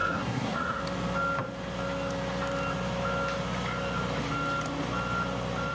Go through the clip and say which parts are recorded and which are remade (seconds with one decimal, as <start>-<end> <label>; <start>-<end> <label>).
0.0-0.8 remade; 0.8-5.7 recorded